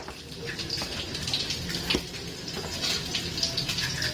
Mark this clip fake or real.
real